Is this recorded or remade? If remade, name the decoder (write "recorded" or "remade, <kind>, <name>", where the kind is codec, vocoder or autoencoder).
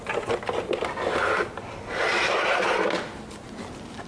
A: recorded